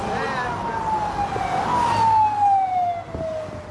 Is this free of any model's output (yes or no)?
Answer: yes